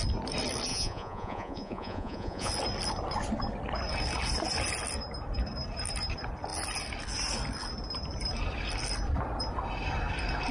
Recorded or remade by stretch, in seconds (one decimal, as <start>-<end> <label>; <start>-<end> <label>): 0.0-0.7 recorded; 0.7-2.5 remade; 2.5-10.5 recorded